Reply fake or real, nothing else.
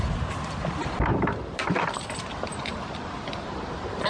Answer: real